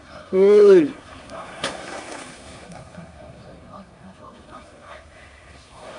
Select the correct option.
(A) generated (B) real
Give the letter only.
A